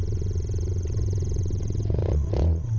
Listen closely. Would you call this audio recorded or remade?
remade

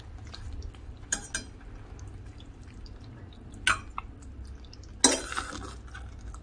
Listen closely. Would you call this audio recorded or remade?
recorded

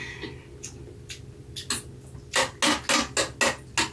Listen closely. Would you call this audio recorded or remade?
recorded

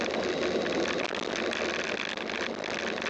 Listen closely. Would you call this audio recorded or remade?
recorded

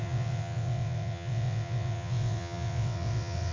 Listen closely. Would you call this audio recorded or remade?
remade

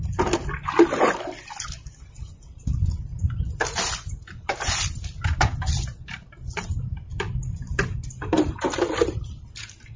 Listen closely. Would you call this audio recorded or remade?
recorded